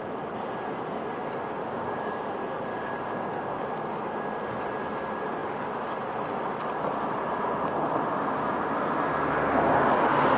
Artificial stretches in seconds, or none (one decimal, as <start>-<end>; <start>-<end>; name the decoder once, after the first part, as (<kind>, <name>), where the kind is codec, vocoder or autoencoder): 1.6-2.2 (codec, DAC); 2.7-3.6